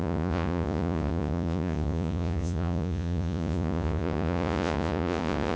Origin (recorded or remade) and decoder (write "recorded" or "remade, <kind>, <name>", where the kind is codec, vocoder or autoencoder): remade, vocoder, Vocos